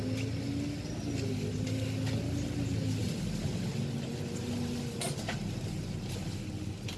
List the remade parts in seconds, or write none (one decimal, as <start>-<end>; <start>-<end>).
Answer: none